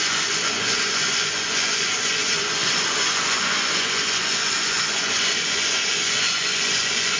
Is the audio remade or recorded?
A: remade